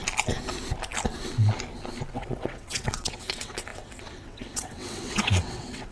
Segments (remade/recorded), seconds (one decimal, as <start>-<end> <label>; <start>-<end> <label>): 0.0-2.1 recorded; 2.1-5.9 remade